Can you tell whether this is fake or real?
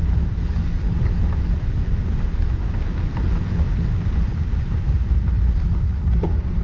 real